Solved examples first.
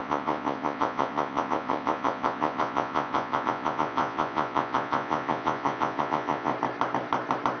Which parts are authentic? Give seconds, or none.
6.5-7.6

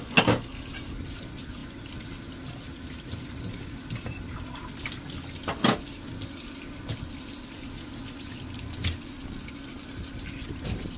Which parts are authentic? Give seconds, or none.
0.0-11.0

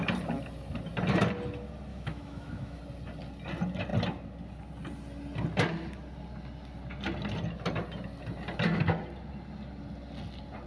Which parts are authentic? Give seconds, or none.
0.0-1.9; 2.8-10.7

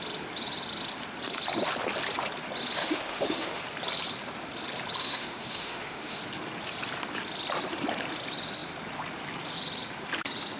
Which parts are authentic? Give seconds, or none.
0.0-2.8; 3.6-5.0; 6.2-10.6

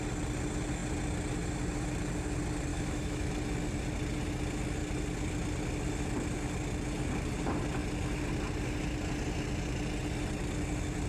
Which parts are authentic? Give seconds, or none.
0.0-2.7; 3.3-11.1

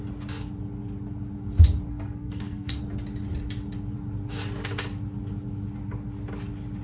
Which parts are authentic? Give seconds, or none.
0.0-1.9; 2.8-6.8

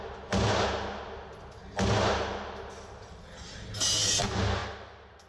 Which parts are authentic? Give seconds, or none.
0.0-5.3